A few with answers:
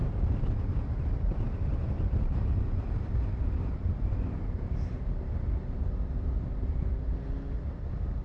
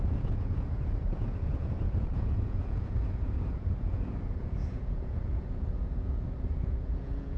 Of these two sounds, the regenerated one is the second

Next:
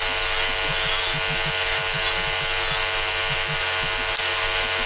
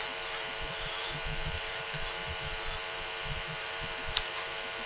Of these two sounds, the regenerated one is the second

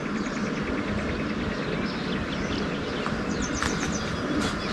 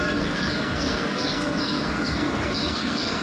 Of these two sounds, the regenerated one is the second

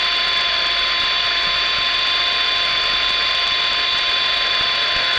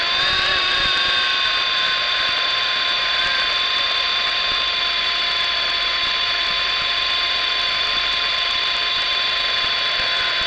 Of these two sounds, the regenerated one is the second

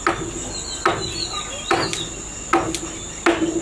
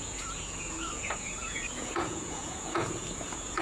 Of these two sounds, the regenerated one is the second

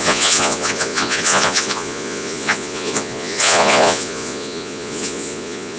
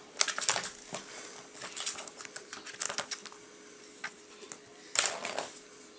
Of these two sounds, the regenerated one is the first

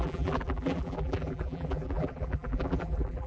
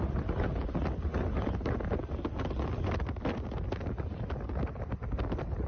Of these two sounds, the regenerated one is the first